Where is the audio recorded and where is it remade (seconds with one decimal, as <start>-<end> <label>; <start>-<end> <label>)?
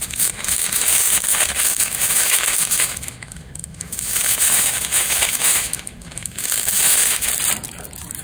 0.0-7.3 remade; 7.3-8.2 recorded